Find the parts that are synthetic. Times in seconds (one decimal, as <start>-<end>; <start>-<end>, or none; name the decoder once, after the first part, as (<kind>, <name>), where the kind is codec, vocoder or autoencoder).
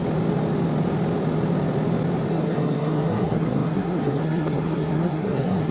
2.3-5.7 (codec, SNAC)